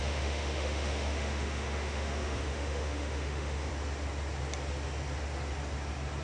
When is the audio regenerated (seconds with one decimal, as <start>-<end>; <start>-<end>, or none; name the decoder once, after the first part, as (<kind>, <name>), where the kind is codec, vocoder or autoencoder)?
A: 0.0-3.7 (autoencoder, DAC-VAE)